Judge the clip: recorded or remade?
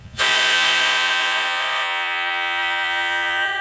remade